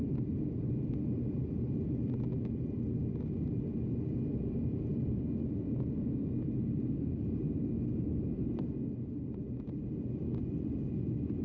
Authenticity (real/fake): real